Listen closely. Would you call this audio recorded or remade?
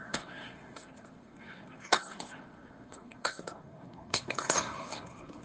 remade